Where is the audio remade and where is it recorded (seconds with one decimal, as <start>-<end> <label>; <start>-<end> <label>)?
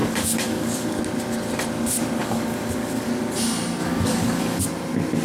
0.0-1.0 remade; 1.0-2.2 recorded; 2.2-3.1 remade; 3.1-3.8 recorded; 3.8-4.6 remade; 4.6-5.2 recorded